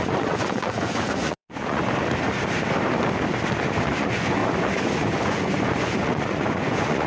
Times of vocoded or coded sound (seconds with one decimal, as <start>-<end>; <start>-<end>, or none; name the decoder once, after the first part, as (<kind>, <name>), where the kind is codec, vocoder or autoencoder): 0.0-1.8 (vocoder, Vocos); 4.0-4.4; 4.9-7.1